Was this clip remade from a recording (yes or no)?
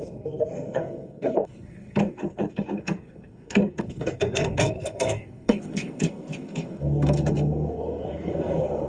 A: yes